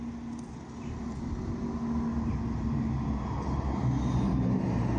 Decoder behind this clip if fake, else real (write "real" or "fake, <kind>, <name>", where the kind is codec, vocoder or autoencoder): real